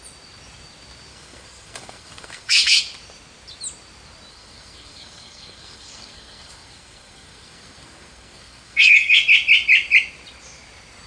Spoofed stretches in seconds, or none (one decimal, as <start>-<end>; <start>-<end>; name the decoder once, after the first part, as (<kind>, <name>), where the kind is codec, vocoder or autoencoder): 1.1-2.8 (codec, SNAC); 4.3-9.2

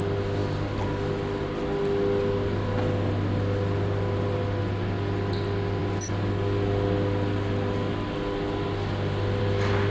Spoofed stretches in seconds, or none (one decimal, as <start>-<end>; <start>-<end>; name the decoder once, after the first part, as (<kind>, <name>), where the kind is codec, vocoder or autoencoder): none

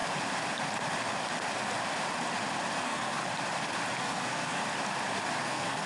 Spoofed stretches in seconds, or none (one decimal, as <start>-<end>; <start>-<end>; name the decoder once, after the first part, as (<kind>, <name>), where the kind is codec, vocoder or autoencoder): 2.8-3.2 (codec, SNAC); 4.0-4.6; 5.4-5.9